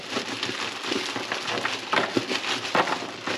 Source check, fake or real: real